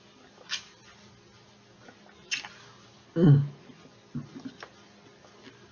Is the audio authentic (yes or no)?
yes